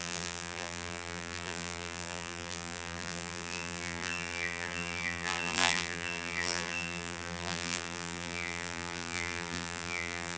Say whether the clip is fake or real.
fake